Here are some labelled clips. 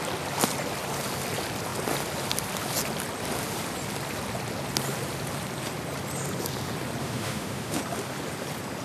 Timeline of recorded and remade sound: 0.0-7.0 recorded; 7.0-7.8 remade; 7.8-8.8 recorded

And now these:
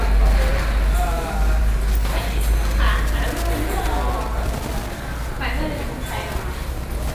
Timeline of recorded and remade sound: 0.0-7.1 recorded

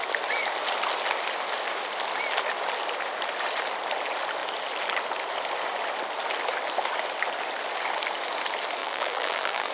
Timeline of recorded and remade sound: 0.0-8.8 recorded; 8.8-9.7 remade

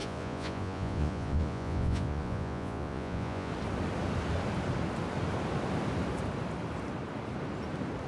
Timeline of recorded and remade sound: 0.0-3.5 remade; 3.5-8.1 recorded

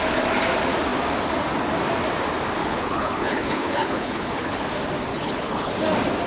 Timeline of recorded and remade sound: 0.0-2.6 recorded; 2.6-4.6 remade; 4.6-5.1 recorded; 5.1-5.7 remade; 5.7-6.3 recorded

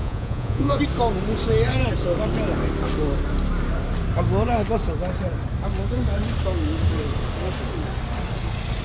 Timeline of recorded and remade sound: 0.0-0.8 remade; 0.8-8.8 recorded

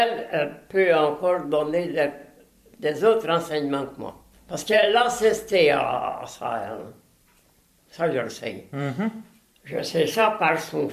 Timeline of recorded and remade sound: 0.0-0.5 remade; 0.5-1.2 recorded; 1.2-2.2 remade; 2.2-4.1 recorded; 4.1-10.9 remade

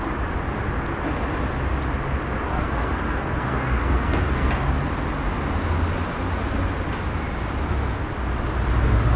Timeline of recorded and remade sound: 0.0-2.5 recorded; 2.5-4.5 remade; 4.5-9.2 recorded